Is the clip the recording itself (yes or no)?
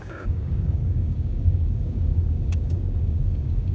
no